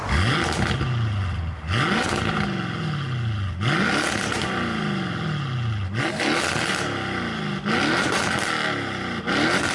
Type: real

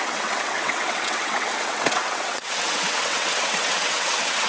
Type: fake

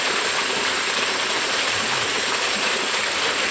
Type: real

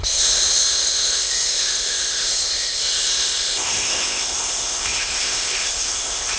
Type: fake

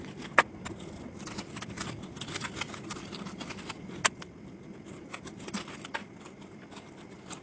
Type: real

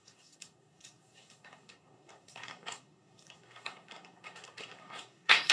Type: fake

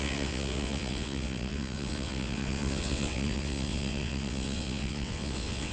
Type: fake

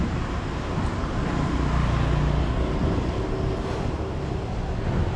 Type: real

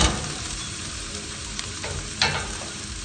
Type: fake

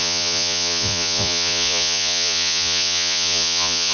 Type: fake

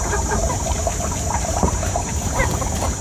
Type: fake